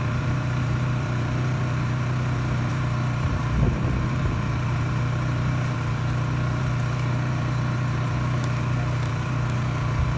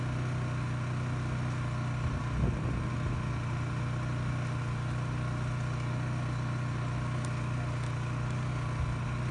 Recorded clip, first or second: second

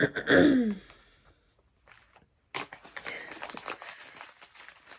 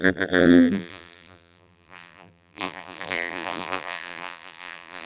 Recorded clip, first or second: first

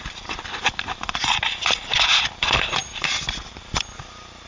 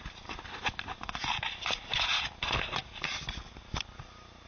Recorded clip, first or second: second